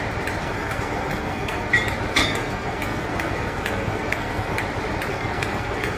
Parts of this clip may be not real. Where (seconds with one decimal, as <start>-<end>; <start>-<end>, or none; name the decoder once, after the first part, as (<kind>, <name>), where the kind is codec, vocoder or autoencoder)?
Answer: 0.4-1.7 (codec, SNAC); 2.1-4.6; 5.1-6.0